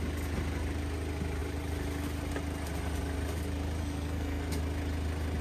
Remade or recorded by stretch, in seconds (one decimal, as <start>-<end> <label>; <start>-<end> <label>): 0.0-3.8 recorded; 3.8-4.6 remade; 4.6-5.4 recorded